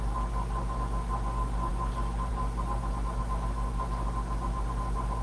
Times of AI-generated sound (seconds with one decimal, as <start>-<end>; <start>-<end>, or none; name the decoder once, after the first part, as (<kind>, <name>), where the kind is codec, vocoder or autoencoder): none

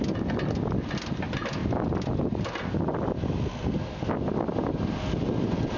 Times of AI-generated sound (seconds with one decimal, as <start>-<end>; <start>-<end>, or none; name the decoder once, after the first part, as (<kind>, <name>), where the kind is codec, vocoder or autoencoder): none